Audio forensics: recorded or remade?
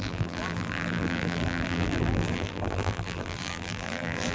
remade